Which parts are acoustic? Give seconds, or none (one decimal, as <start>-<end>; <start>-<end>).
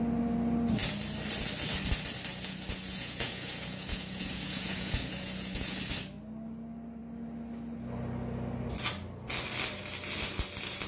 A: 0.0-2.3; 5.8-10.9